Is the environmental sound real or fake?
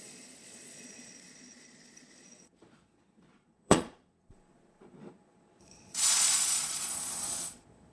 fake